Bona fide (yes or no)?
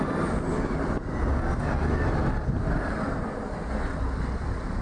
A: yes